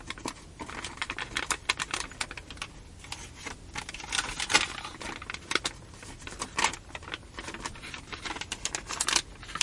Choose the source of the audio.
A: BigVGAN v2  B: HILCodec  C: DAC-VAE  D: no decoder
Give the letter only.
D